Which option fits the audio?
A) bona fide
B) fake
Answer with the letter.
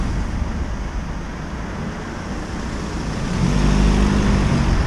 A